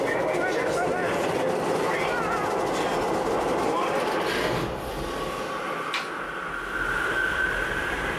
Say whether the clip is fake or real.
real